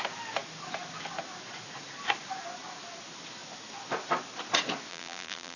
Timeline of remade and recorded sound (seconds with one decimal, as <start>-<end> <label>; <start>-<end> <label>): 0.0-4.9 recorded; 4.9-5.6 remade